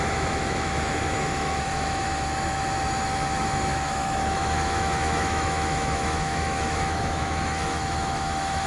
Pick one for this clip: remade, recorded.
remade